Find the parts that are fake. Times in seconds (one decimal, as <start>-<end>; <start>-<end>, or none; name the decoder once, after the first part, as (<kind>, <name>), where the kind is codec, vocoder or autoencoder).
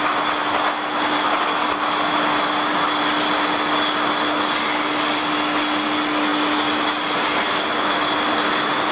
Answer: none